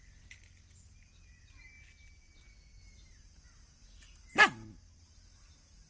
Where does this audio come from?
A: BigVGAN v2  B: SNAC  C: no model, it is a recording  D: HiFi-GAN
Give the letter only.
C